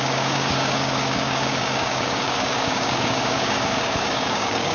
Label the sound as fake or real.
fake